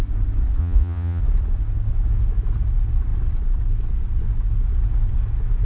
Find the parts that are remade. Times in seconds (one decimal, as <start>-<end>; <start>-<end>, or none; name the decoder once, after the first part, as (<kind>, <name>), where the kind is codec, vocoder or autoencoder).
0.6-1.2 (vocoder, Vocos)